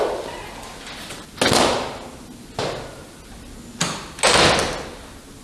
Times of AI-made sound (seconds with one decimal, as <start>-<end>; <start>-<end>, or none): none